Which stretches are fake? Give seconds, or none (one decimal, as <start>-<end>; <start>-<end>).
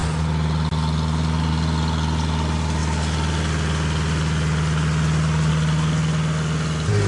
none